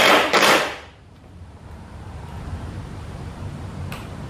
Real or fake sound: fake